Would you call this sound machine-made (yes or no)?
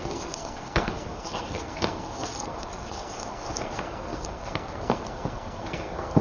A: yes